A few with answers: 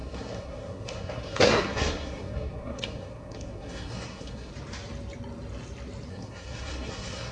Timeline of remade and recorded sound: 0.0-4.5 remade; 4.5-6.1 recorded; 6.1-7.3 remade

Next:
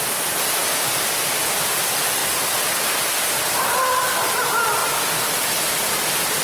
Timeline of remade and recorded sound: 0.0-6.4 recorded